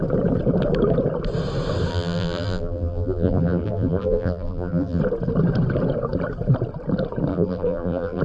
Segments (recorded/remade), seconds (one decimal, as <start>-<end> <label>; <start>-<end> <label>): 0.0-1.9 recorded; 1.9-5.0 remade; 5.0-7.3 recorded; 7.3-8.2 remade